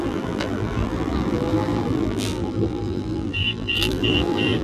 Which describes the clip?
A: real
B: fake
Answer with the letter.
B